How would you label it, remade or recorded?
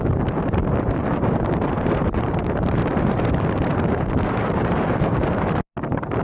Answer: remade